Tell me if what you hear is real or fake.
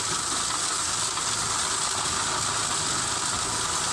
real